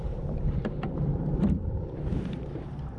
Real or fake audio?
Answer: fake